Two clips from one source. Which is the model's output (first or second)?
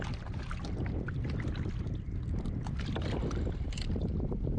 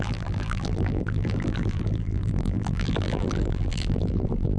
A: second